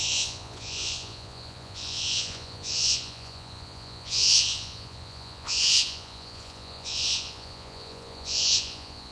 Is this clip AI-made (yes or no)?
yes